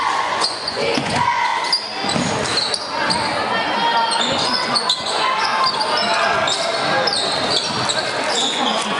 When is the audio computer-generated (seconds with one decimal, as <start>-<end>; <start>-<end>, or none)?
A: 0.0-1.5; 4.2-5.5; 8.3-9.0